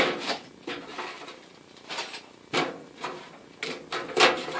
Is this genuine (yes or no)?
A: yes